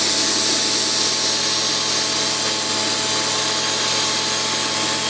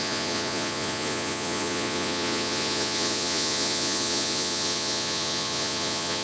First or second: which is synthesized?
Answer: second